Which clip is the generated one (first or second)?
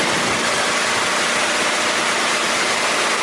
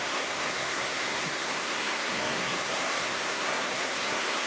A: second